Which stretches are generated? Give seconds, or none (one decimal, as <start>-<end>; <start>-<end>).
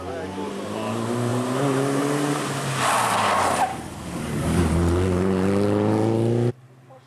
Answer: 3.7-4.6